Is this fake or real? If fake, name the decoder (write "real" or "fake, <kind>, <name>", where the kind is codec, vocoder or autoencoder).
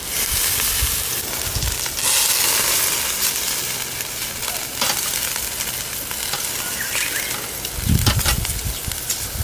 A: real